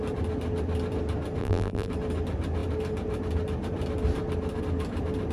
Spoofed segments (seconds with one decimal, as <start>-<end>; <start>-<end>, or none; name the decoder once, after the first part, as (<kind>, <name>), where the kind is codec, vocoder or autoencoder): 1.4-1.9 (vocoder, BigVGAN v2)